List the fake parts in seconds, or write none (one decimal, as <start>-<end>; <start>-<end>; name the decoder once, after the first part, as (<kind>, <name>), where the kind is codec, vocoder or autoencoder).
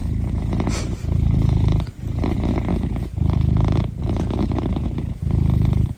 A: 0.8-2.7 (vocoder, BigVGAN v2); 4.0-6.0